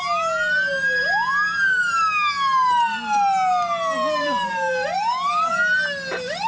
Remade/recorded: recorded